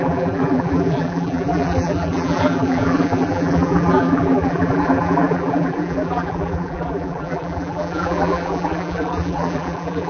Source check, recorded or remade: remade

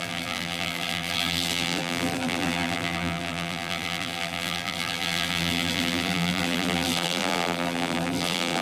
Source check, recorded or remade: remade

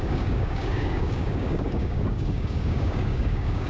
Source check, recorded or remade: remade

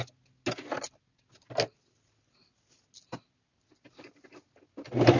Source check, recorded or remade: recorded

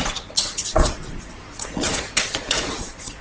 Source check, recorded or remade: remade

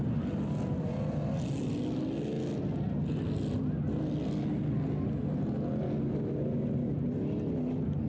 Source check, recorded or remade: recorded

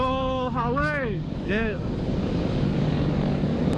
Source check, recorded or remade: remade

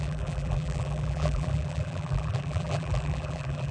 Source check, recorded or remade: remade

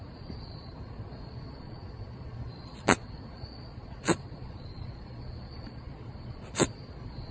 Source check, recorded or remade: remade